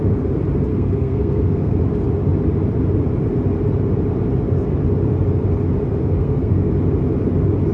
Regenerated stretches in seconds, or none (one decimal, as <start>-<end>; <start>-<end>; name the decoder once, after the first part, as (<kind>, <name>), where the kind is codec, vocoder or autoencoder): 0.7-1.8 (codec, SNAC); 6.0-6.7